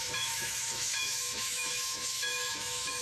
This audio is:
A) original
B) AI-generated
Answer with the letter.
B